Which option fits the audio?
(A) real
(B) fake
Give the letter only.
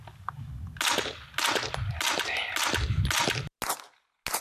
A